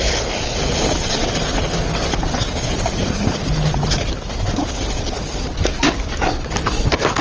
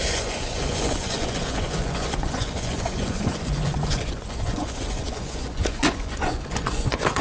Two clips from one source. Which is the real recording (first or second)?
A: first